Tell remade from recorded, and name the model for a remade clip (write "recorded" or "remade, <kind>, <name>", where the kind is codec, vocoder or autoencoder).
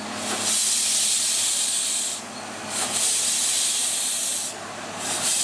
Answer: recorded